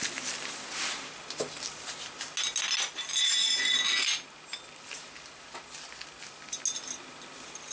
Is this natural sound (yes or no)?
yes